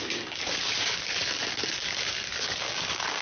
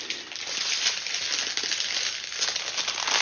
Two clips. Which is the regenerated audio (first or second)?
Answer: first